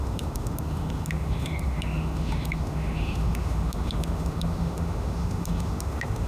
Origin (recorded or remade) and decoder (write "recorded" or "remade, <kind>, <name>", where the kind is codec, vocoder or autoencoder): remade, autoencoder, DAC-VAE